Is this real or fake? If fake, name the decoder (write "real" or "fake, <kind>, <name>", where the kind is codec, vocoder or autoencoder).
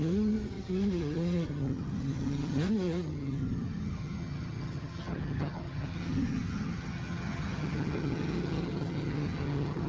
fake, vocoder, HiFi-GAN